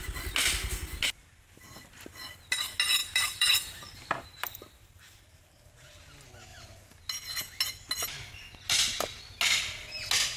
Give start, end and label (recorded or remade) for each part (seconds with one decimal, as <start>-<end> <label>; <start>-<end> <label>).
0.0-3.0 recorded; 3.0-5.7 remade; 5.7-10.4 recorded